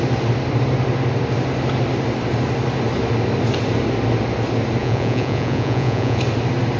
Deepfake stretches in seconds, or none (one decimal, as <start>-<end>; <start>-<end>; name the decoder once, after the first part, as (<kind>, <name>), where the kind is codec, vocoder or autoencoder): 4.8-6.2 (vocoder, Vocos)